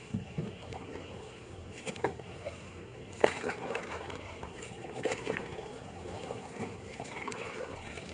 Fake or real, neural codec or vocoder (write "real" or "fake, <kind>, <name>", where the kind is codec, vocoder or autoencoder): fake, codec, SNAC